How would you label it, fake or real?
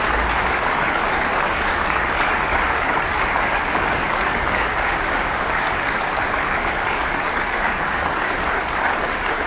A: fake